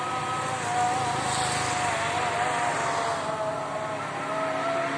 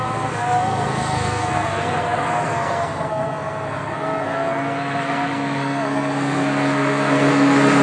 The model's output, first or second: second